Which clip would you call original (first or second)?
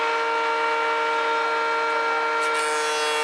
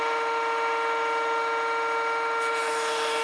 first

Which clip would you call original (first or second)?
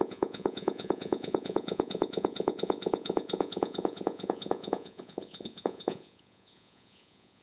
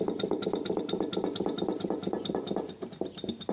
second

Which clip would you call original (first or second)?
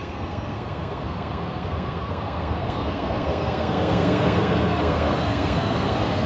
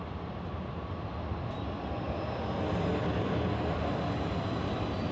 second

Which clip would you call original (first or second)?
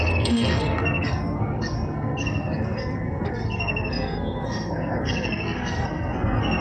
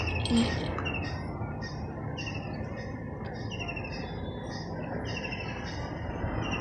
second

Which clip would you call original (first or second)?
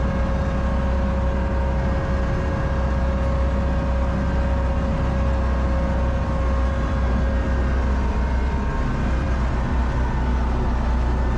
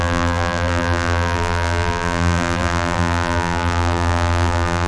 first